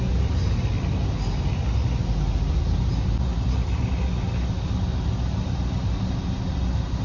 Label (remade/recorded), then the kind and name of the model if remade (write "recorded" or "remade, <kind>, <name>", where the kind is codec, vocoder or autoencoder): recorded